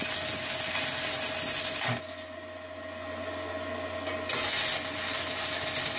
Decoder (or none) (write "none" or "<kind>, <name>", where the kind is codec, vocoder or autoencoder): none